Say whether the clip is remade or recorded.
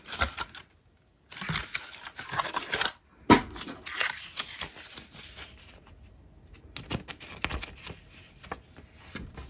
recorded